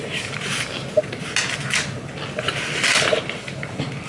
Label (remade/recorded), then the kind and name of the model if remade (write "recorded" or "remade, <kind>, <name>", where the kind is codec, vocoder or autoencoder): recorded